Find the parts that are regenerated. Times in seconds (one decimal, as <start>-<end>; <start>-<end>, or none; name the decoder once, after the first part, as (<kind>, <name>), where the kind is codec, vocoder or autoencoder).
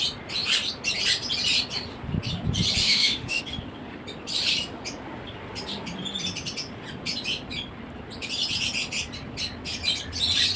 2.8-3.4 (autoencoder, DAC-VAE)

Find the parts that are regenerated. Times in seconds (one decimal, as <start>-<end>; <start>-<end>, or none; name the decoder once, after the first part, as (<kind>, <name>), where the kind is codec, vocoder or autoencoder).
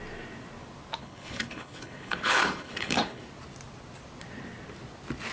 1.0-3.2 (codec, HILCodec)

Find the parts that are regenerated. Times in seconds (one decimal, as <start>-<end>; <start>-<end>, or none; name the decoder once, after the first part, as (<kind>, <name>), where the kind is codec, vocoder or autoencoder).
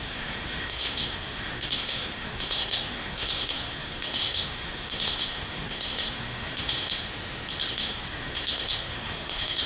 0.0-7.0 (codec, SNAC); 7.7-9.7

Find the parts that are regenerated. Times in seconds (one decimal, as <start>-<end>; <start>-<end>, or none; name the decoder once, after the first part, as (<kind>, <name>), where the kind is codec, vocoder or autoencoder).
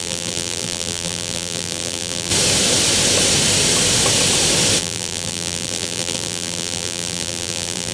0.0-2.3 (vocoder, BigVGAN v2); 4.8-7.9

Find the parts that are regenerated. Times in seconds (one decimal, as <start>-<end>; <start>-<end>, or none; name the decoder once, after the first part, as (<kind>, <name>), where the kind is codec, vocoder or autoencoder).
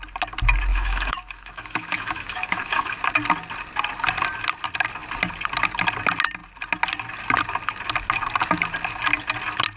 0.7-3.0 (autoencoder, DAC-VAE)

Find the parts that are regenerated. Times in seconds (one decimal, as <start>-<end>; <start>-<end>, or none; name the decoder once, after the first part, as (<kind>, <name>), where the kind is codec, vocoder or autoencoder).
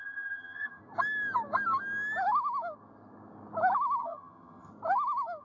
0.0-0.8 (vocoder, HiFi-GAN); 4.0-4.7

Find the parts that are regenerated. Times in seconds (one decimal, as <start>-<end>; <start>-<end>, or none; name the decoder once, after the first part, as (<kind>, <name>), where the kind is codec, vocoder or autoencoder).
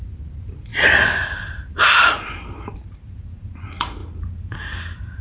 0.7-3.6 (vocoder, BigVGAN v2); 4.0-5.2